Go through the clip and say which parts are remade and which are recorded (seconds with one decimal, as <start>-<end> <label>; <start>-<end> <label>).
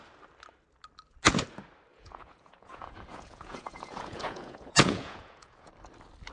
0.0-1.9 recorded; 1.9-5.7 remade; 5.7-6.3 recorded